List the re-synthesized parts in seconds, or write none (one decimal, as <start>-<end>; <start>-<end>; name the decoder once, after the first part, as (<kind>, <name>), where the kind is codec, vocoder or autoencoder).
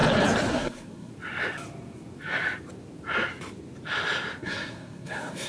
0.5-1.1 (codec, SNAC); 4.4-5.5